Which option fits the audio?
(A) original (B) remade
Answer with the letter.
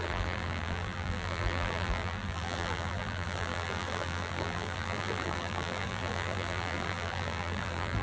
B